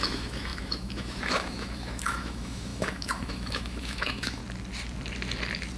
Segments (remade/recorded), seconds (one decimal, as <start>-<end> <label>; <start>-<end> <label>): 0.0-4.4 remade; 4.4-5.8 recorded